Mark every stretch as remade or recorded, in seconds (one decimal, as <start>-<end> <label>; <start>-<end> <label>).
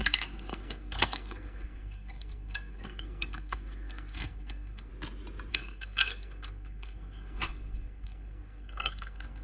0.0-4.9 remade; 4.9-5.5 recorded; 5.5-9.4 remade